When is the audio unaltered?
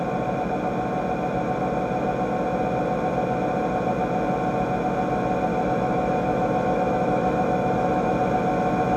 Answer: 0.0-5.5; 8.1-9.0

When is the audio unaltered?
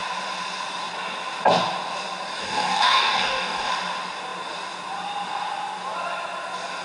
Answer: 0.0-2.4; 3.7-6.8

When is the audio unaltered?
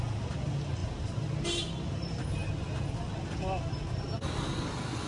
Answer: 0.0-5.1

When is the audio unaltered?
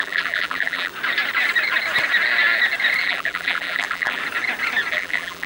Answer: 0.9-3.0; 4.2-4.9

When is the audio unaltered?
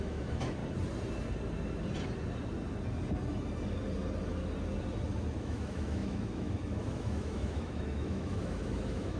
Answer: 0.6-5.4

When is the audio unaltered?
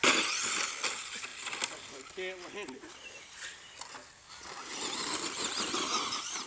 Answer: 0.0-6.5